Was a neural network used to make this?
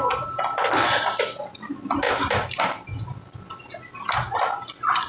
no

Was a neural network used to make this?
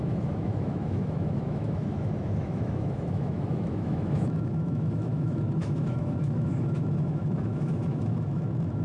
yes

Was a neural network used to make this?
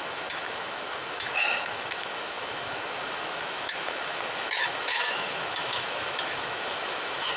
yes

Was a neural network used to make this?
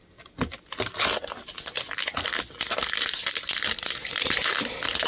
no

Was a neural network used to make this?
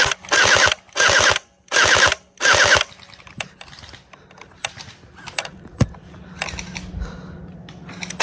no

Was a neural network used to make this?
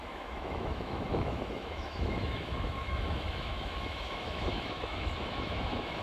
yes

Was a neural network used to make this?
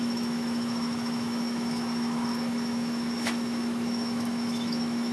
yes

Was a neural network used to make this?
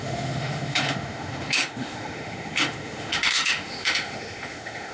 yes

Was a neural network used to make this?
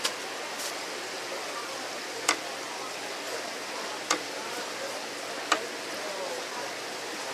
no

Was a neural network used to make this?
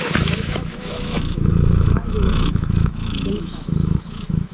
yes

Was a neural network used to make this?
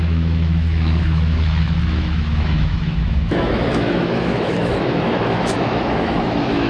yes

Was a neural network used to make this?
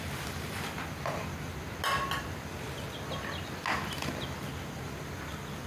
no